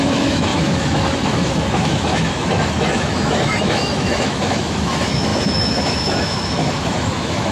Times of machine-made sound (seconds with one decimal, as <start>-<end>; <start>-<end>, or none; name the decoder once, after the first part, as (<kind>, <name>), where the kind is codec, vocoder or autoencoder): 0.0-7.5 (autoencoder, DAC-VAE)